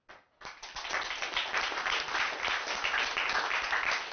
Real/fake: real